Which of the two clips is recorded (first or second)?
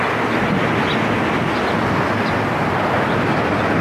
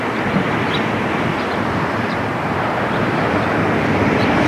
first